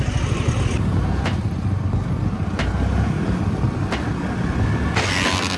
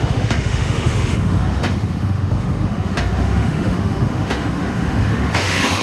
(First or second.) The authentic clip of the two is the first